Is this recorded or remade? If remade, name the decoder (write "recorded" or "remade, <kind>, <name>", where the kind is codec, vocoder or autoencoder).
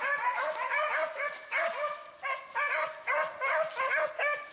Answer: recorded